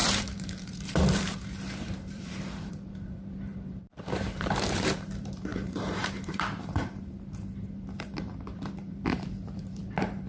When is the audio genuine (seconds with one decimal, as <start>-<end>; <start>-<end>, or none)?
none